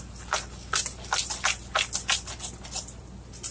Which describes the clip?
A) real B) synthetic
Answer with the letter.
A